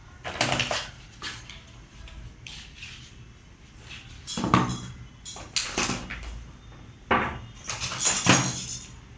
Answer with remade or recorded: recorded